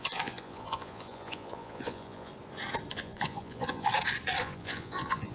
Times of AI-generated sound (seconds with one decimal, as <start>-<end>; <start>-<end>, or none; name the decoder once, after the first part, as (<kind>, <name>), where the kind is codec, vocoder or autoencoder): 0.0-2.3 (vocoder, Vocos); 2.9-3.9; 4.4-5.3